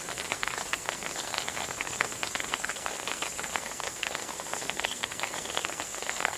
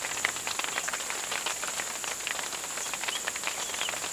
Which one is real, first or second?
second